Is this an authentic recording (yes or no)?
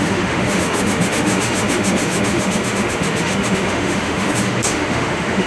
no